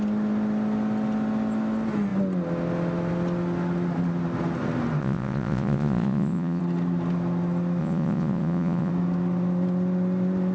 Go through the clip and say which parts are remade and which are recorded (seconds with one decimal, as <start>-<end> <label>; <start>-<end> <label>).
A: 0.0-5.0 recorded; 5.0-6.6 remade; 6.6-7.8 recorded; 7.8-8.9 remade; 8.9-10.5 recorded